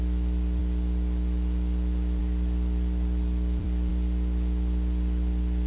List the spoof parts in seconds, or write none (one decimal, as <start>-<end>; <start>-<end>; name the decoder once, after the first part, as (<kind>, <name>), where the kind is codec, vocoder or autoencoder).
0.0-0.6 (vocoder, BigVGAN v2); 2.2-3.9